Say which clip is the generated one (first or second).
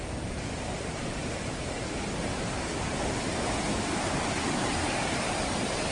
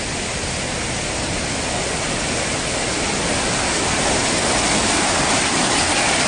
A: first